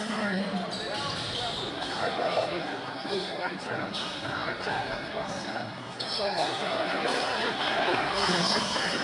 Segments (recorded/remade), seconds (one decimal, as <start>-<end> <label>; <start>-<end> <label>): 0.0-0.4 remade; 0.4-1.7 recorded; 1.7-9.0 remade